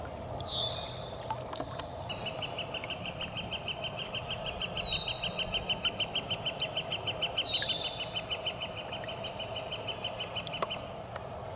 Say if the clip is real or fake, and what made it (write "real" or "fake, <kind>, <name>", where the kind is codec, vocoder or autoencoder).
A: real